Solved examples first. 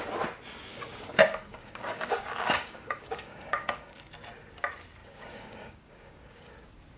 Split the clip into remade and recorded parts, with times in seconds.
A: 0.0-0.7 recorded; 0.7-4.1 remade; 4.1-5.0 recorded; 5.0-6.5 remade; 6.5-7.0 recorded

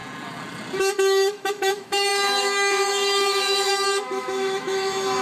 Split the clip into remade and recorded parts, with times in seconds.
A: 0.0-0.8 recorded; 0.8-5.2 remade

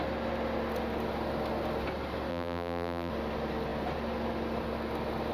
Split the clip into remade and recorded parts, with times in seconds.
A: 0.0-2.3 recorded; 2.3-3.1 remade; 3.1-5.3 recorded